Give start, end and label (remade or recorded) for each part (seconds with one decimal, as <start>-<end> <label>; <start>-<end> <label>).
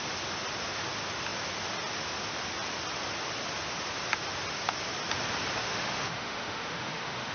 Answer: 0.0-5.6 recorded; 5.6-7.3 remade